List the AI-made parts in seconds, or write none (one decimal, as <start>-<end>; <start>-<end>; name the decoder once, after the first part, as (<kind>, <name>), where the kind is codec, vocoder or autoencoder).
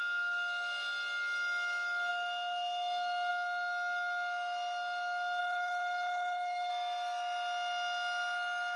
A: 5.4-6.7 (codec, HILCodec)